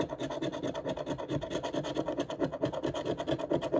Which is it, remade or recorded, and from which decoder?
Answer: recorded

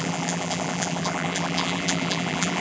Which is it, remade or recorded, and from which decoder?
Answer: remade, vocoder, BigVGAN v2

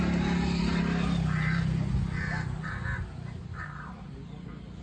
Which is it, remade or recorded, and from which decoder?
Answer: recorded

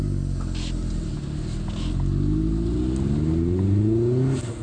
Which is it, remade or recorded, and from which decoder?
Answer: recorded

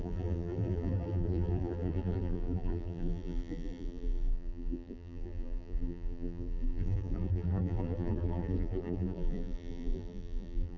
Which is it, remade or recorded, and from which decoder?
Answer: remade, vocoder, BigVGAN v2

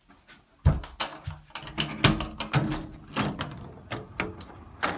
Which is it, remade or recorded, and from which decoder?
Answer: recorded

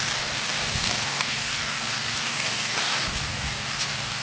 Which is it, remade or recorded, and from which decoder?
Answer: remade, codec, DAC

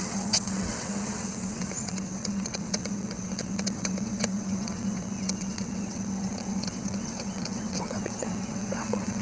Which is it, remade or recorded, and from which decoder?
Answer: remade, vocoder, WaveNeXt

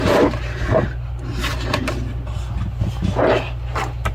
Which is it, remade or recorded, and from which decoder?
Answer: recorded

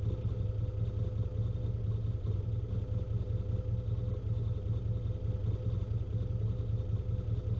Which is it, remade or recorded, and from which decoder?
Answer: recorded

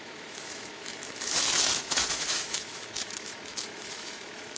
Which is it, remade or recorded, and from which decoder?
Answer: remade, autoencoder, DAC-VAE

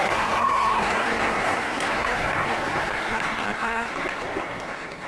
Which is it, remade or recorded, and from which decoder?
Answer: remade, codec, SNAC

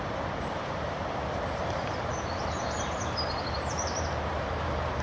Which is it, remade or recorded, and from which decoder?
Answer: remade, vocoder, BigVGAN v2